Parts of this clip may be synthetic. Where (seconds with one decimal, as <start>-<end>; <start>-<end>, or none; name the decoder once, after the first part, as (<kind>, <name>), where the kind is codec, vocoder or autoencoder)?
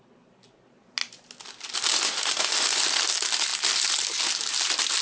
none